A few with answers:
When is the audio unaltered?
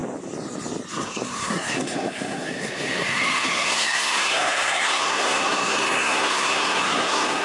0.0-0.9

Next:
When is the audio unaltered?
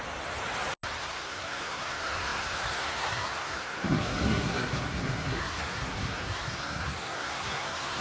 0.0-1.0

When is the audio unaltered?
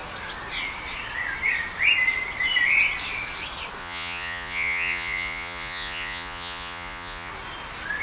0.0-3.8; 7.3-8.0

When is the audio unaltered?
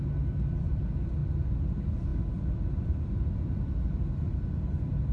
0.0-5.1